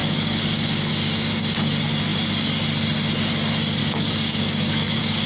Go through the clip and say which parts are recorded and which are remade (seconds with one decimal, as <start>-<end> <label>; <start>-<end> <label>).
0.0-0.9 remade; 0.9-3.8 recorded; 3.8-5.3 remade